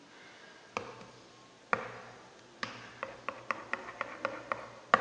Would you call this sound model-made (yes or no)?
no